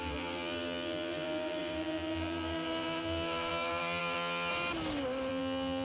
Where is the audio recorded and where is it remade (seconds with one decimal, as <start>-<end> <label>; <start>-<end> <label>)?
0.0-4.5 remade; 4.5-5.3 recorded; 5.3-5.8 remade